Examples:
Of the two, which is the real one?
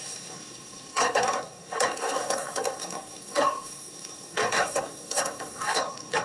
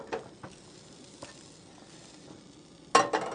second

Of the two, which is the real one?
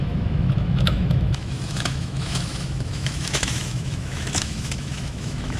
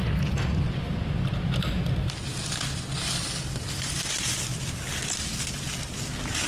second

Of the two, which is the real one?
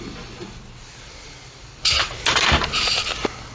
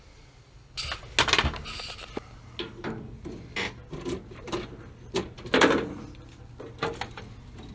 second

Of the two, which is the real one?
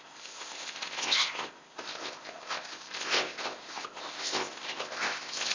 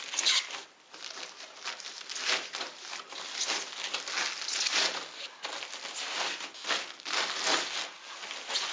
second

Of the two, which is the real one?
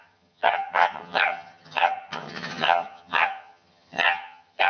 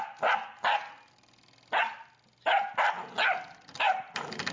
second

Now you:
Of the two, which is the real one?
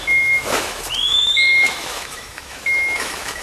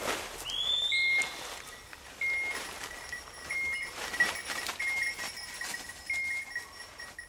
second